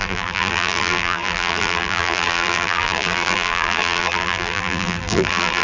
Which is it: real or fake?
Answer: fake